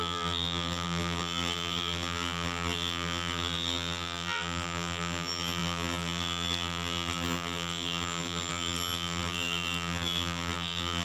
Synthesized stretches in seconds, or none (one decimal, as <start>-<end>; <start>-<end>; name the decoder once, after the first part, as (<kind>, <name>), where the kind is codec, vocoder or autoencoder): 0.0-11.0 (vocoder, BigVGAN v2)